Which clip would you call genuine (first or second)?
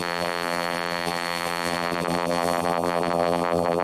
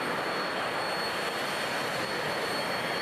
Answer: second